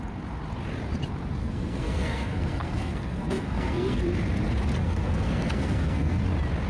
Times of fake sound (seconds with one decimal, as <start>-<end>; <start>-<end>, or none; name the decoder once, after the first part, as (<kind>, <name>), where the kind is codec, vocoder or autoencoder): 1.4-4.0 (codec, SNAC); 4.8-6.2